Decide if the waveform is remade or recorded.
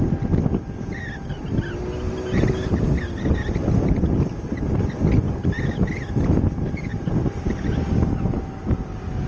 recorded